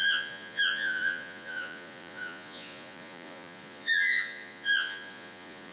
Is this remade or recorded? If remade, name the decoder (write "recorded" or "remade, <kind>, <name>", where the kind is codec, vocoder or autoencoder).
remade, vocoder, Vocos